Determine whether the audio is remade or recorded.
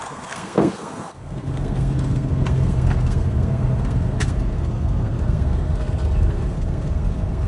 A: remade